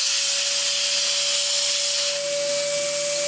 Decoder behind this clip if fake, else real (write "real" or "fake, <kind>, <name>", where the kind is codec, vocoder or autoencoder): real